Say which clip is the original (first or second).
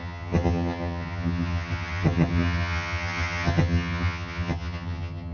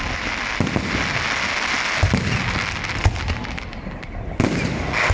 second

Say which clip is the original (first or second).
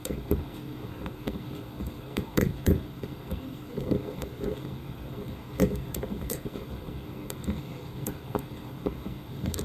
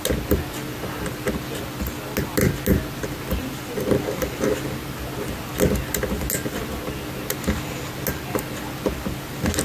second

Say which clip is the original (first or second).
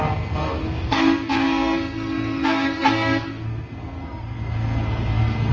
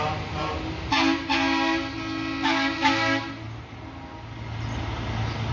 second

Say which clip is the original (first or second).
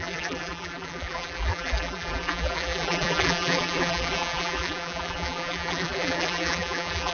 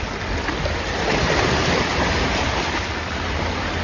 second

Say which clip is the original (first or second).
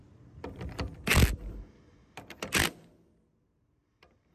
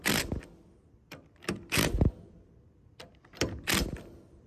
first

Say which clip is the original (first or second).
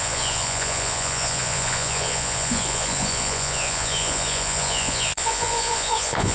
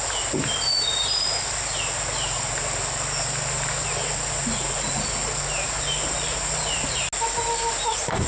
second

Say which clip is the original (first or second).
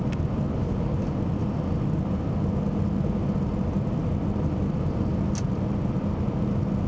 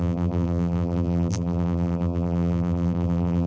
first